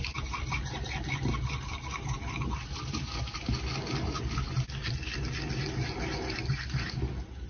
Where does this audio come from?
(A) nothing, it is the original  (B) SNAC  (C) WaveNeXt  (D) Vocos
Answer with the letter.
A